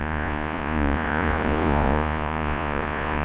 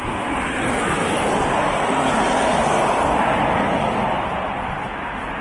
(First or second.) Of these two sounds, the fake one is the first